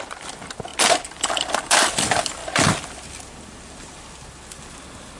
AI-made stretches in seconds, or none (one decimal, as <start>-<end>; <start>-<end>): none